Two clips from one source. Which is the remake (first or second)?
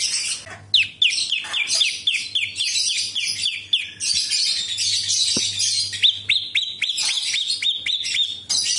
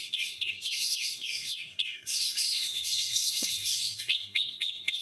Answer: second